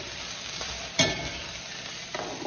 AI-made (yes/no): no